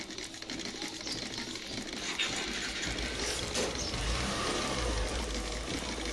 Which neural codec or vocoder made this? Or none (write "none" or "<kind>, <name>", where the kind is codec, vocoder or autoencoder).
none